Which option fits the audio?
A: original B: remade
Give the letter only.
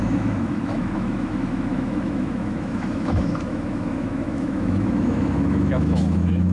B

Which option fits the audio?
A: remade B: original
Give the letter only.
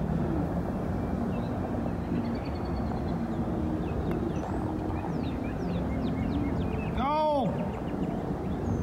B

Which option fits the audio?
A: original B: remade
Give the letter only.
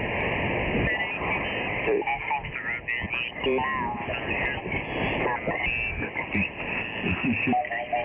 A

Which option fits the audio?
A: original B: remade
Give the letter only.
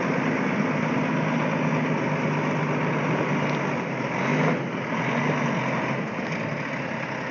A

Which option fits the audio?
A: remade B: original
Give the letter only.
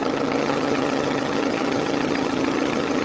A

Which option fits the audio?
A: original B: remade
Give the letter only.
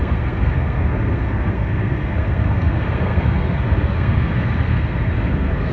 B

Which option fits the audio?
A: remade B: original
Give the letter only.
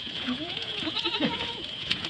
A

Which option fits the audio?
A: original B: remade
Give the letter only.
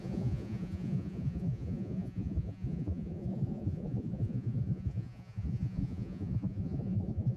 B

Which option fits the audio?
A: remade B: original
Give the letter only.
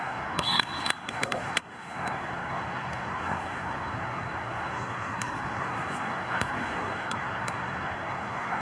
A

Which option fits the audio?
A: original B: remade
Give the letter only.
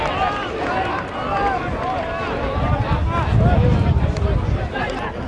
A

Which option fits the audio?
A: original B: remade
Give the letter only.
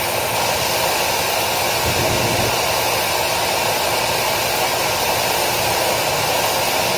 B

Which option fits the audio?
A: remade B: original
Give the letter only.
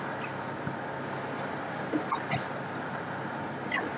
B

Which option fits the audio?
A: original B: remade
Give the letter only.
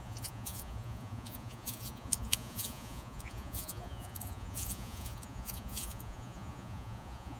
B